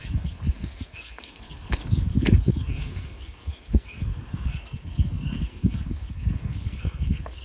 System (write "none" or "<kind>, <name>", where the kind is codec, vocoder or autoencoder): codec, SNAC